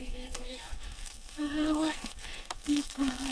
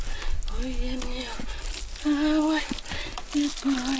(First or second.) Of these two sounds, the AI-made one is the first